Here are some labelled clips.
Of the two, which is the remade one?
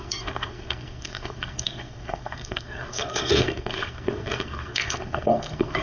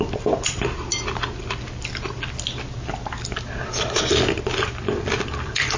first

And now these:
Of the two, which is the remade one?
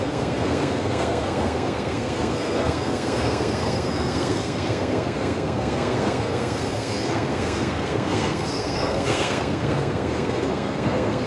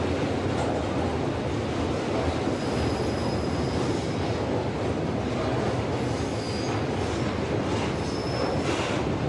first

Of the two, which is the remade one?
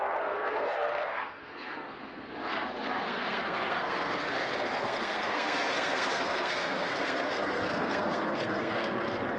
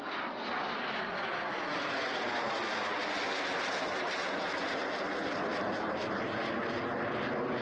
first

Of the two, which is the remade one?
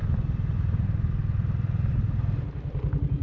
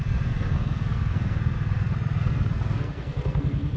second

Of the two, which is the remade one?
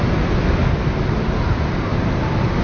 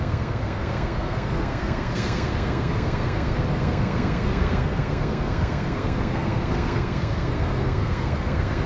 second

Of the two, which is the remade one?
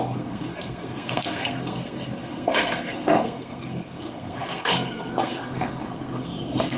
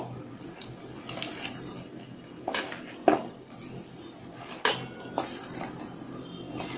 first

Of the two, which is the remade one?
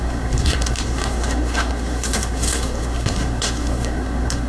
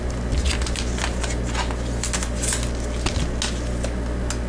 first